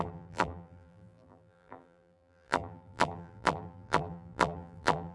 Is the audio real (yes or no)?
no